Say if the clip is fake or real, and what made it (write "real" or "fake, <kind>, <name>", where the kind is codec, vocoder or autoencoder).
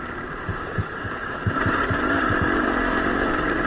fake, vocoder, BigVGAN v2